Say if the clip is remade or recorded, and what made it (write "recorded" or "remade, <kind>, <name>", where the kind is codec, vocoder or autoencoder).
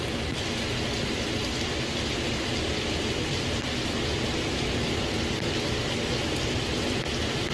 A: recorded